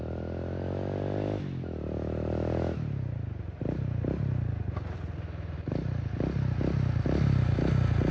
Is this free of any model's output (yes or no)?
yes